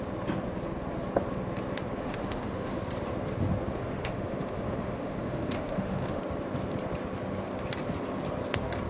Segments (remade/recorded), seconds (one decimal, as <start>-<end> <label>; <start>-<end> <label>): 0.0-2.0 recorded; 2.0-2.8 remade; 2.8-3.7 recorded; 3.7-6.2 remade; 6.2-8.9 recorded